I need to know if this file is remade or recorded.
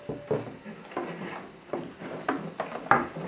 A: recorded